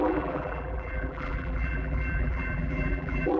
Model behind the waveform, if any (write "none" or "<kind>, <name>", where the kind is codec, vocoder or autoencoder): vocoder, BigVGAN v2